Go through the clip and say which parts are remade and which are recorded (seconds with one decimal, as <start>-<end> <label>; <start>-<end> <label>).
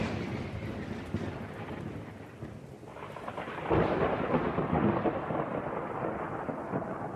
0.0-2.9 recorded; 2.9-3.5 remade; 3.5-7.2 recorded